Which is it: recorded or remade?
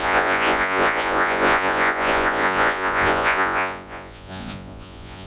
remade